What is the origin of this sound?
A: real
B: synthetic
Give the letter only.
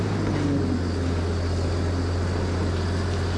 A